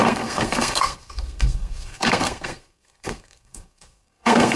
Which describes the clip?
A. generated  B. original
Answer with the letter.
A